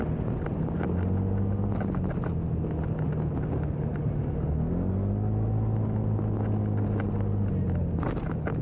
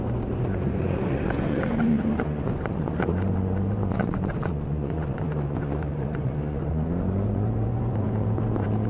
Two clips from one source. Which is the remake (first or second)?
second